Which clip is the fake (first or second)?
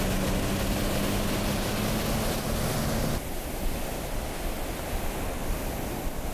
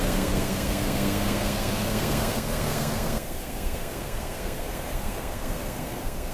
second